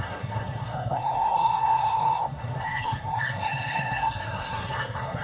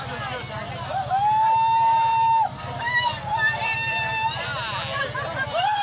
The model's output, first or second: first